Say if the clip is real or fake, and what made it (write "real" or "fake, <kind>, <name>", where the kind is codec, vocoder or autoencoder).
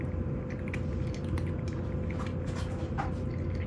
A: real